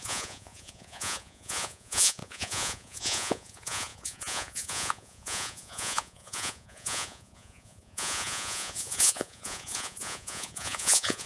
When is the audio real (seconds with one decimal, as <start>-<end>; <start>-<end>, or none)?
none